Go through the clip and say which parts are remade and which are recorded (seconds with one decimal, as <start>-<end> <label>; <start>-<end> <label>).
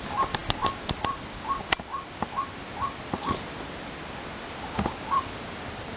0.0-6.0 recorded